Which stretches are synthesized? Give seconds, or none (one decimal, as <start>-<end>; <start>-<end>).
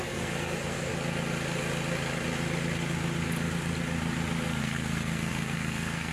0.0-0.9; 4.6-6.1